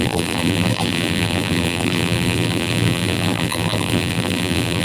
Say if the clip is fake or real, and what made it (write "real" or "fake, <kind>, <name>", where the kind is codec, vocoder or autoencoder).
fake, vocoder, BigVGAN v2